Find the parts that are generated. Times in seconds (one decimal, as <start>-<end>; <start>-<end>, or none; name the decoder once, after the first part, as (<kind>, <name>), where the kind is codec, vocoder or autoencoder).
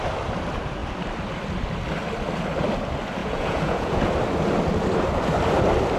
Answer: 3.2-4.0 (vocoder, Vocos)